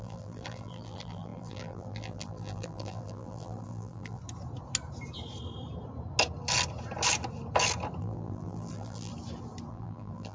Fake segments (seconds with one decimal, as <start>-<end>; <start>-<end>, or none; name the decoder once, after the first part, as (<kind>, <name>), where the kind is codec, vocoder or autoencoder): 0.0-4.2 (vocoder, BigVGAN v2); 8.0-9.1; 9.7-10.3

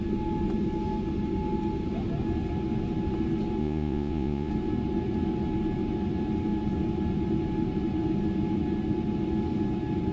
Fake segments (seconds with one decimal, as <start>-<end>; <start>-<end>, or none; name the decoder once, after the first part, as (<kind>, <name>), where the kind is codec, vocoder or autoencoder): 3.6-4.5 (vocoder, Vocos)